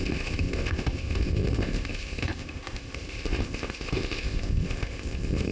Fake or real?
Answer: fake